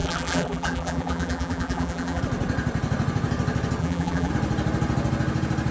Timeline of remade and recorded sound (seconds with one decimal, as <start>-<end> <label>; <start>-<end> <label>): 0.0-2.2 remade; 2.2-3.8 recorded; 3.8-4.3 remade; 4.3-5.7 recorded